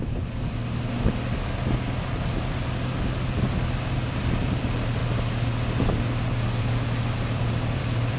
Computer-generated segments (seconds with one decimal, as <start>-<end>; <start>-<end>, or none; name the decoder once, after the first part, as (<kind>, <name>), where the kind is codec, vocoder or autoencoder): 0.0-0.6 (vocoder, BigVGAN v2); 4.1-5.0; 6.6-8.2